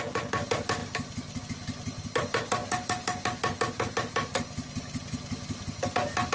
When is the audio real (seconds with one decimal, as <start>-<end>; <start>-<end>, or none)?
0.0-6.3